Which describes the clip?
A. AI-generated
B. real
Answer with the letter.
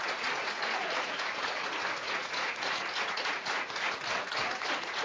A